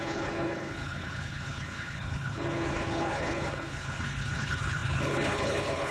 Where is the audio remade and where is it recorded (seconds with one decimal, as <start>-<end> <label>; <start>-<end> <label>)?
0.0-5.9 remade